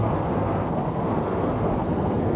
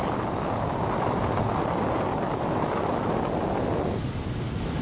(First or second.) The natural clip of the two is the second